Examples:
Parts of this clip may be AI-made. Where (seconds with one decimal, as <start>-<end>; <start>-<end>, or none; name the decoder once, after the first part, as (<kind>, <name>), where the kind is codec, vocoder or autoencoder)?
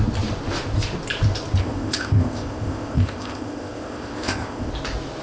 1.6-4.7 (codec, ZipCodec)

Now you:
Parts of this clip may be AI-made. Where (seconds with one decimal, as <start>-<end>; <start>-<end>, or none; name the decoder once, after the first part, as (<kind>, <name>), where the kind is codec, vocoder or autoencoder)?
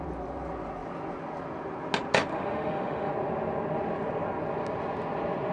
2.3-3.1 (autoencoder, DAC-VAE)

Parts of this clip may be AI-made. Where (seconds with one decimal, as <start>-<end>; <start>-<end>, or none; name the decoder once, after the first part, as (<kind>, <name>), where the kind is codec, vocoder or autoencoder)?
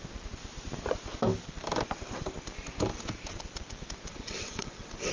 4.1-5.1 (vocoder, WaveNeXt)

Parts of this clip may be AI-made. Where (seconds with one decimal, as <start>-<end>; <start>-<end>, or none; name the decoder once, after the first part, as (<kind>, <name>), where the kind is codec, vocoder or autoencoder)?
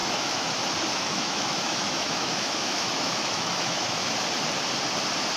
0.0-0.5 (autoencoder, DAC-VAE); 0.9-4.1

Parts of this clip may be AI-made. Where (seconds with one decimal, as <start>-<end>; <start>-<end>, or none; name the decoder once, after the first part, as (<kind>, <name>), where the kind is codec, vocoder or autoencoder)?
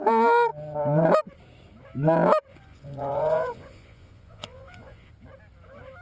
2.5-5.1 (vocoder, Vocos)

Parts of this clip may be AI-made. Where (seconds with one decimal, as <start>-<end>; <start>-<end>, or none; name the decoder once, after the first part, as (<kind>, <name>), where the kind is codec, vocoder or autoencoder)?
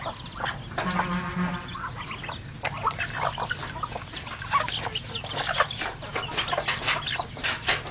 none